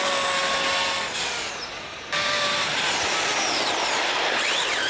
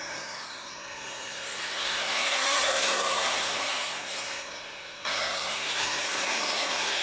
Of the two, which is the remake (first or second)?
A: second